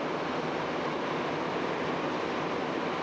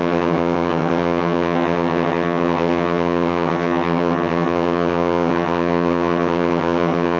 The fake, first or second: second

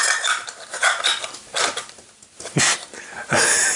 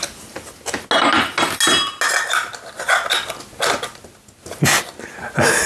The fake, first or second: first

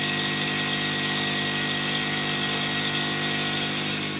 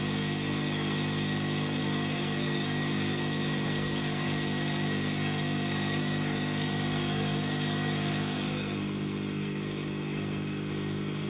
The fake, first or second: second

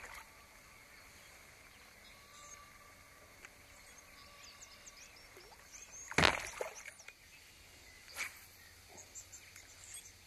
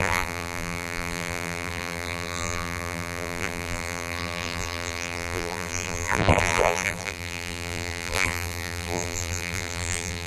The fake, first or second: second